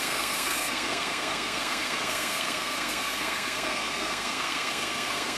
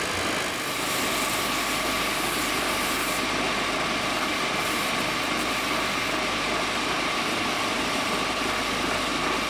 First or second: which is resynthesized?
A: first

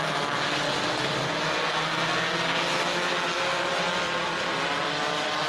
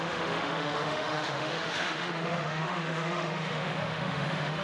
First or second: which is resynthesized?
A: second